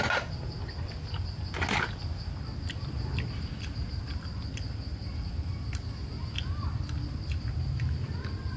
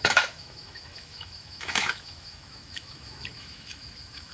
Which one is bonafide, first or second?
first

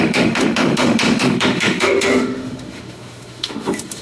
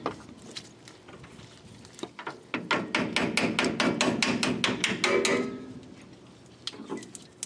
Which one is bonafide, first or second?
second